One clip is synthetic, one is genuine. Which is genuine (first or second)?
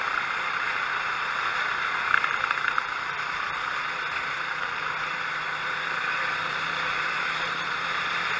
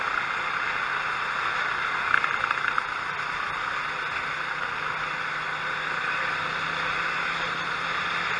second